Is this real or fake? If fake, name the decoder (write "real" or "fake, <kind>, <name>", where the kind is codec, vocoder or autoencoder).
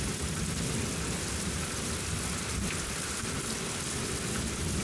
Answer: real